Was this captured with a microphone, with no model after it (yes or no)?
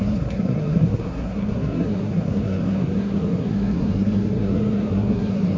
no